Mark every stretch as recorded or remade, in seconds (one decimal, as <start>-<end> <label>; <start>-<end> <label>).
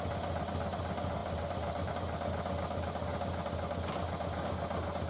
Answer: 0.0-1.2 recorded; 1.2-1.9 remade; 1.9-5.1 recorded